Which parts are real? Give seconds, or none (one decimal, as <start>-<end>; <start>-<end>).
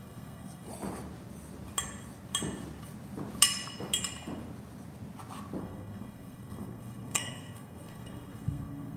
0.7-5.6